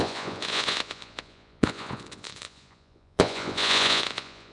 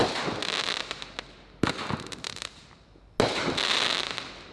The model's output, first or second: first